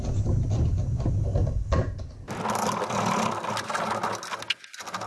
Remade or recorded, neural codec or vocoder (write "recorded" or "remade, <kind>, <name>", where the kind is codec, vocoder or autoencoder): recorded